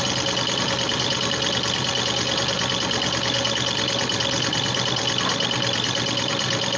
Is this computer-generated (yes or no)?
no